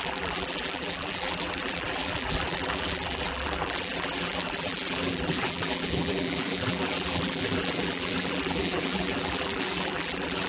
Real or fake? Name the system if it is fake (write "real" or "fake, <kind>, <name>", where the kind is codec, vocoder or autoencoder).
fake, vocoder, BigVGAN v2